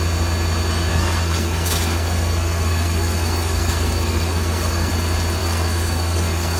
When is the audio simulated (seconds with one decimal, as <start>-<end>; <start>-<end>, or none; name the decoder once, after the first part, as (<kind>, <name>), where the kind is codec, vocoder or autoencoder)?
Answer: 0.9-4.9 (codec, SNAC); 5.4-6.6